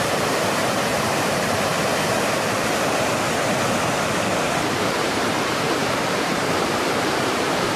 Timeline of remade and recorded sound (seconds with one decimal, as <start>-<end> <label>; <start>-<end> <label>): 0.0-1.7 remade; 1.7-4.4 recorded; 4.4-7.8 remade